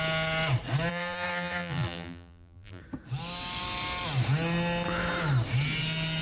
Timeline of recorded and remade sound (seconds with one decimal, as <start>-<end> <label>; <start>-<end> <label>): 0.0-0.9 recorded; 0.9-2.8 remade; 2.8-6.2 recorded